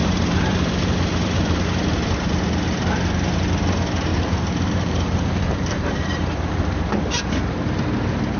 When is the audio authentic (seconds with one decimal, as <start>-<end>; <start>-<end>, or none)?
2.1-4.1; 6.4-8.4